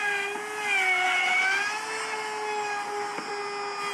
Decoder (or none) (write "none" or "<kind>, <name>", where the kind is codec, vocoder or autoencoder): none